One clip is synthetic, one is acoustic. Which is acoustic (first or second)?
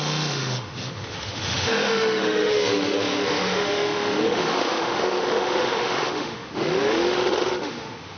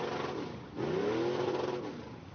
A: second